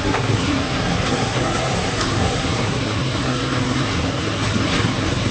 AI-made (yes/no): yes